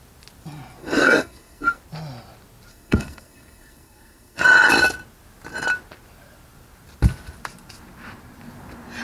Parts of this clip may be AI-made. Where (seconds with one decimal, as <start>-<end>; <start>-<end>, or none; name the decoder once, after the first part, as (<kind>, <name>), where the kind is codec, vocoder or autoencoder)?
0.8-1.8 (codec, SNAC); 2.7-4.4